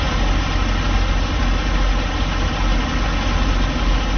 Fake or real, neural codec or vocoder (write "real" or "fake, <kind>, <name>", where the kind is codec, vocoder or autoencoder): real